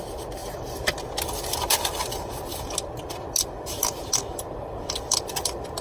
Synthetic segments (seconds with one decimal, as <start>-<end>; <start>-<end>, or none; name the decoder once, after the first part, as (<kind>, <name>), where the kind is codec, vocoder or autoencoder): 0.0-0.4 (vocoder, BigVGAN v2); 2.1-2.5; 4.2-5.8